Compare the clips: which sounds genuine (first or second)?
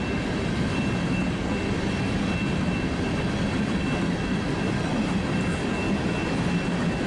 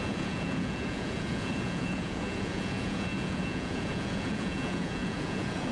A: first